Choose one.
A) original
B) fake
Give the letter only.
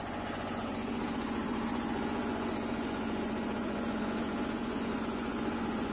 B